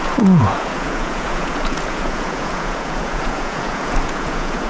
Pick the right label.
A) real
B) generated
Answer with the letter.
B